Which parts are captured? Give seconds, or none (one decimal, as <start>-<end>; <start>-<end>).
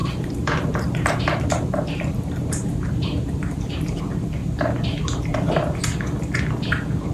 4.0-7.1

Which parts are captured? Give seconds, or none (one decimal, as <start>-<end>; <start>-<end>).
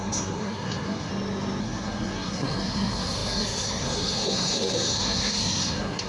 1.1-1.6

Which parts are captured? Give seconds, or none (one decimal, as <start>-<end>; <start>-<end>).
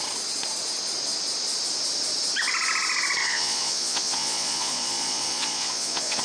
0.0-3.2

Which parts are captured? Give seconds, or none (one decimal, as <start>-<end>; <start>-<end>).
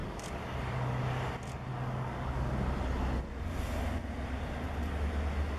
1.0-1.7; 2.3-5.6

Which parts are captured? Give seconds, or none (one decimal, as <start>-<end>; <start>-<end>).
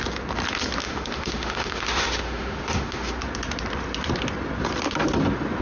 0.0-0.8; 3.2-5.6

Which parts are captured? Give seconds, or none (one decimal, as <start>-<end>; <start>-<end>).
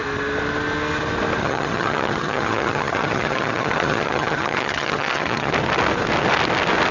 0.0-1.4; 5.5-6.9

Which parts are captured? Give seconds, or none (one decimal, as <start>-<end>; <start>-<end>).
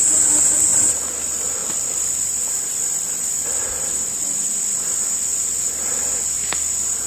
0.0-0.7; 1.2-1.6; 4.5-7.1